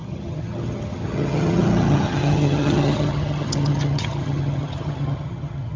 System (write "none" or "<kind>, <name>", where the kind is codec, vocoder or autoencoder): vocoder, HiFi-GAN